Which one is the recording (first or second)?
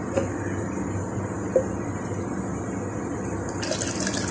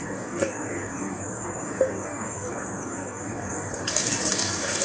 first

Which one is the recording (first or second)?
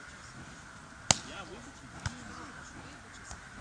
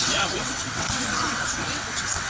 first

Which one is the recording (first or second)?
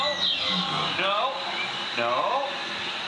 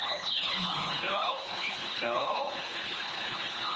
first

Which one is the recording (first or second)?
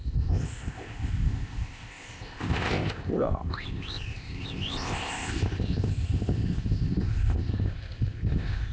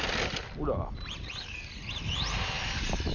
second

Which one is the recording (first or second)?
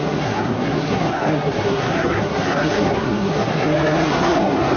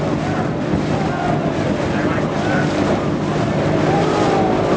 second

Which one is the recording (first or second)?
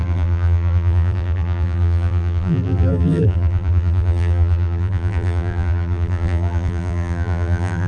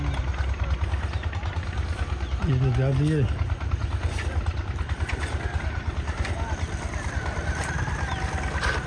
second